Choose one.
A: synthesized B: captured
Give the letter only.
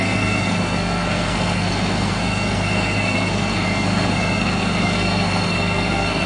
A